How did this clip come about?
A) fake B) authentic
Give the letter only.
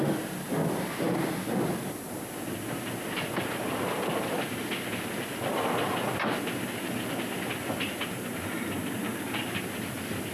B